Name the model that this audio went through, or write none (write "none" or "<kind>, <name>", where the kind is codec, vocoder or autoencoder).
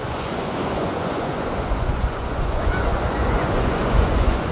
vocoder, Vocos